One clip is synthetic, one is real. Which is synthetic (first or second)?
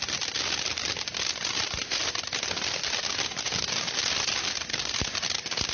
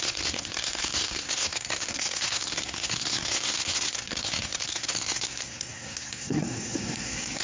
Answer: second